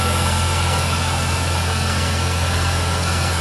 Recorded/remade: remade